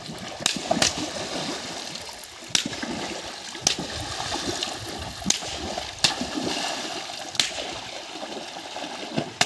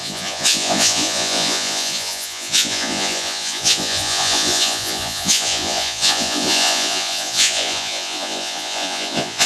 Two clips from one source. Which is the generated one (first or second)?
second